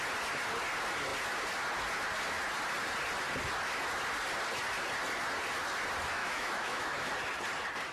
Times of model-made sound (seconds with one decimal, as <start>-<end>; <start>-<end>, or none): 6.2-7.1